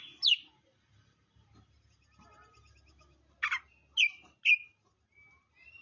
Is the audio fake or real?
real